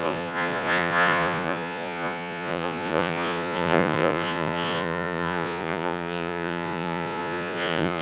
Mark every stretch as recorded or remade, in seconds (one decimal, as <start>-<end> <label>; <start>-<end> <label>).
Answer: 0.0-8.0 remade